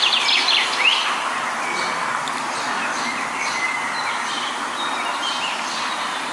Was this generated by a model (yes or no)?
no